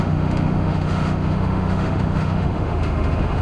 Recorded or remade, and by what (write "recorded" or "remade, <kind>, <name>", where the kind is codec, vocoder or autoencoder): remade, autoencoder, DAC-VAE